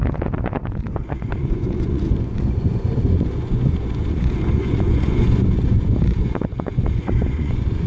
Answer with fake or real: fake